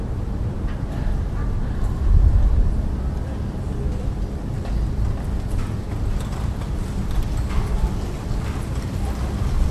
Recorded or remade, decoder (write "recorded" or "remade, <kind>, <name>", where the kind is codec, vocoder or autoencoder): recorded